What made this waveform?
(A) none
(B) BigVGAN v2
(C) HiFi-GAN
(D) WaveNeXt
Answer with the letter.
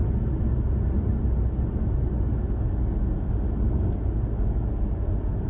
A